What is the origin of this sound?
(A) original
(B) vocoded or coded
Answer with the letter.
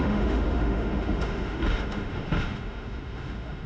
B